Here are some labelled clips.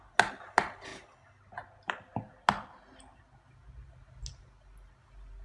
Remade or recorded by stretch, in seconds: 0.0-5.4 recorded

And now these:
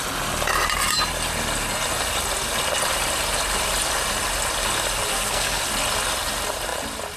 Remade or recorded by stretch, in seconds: 0.0-5.1 recorded; 5.1-5.6 remade; 5.6-7.2 recorded

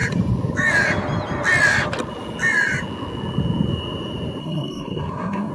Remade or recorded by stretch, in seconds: 0.0-4.4 recorded; 4.4-5.5 remade